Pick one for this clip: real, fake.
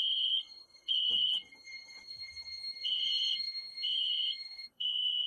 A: fake